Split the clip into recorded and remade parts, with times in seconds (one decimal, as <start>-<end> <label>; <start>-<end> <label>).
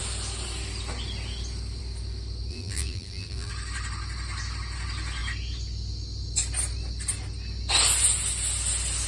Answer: 0.0-2.5 recorded; 2.5-3.5 remade; 3.5-9.1 recorded